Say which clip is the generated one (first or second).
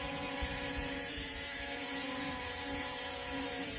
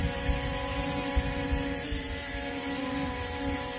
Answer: first